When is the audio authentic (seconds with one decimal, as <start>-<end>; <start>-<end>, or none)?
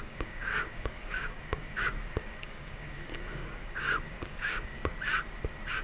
4.8-5.8